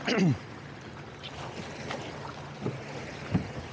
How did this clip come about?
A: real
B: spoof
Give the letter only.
A